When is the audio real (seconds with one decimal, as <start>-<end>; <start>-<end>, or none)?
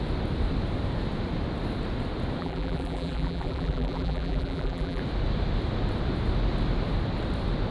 0.0-2.4; 5.0-7.7